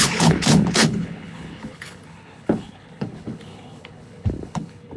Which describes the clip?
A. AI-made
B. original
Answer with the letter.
A